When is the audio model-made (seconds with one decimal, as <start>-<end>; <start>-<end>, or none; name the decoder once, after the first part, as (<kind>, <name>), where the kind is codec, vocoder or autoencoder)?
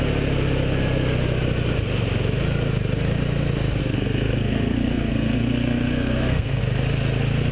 3.8-6.6 (codec, SNAC)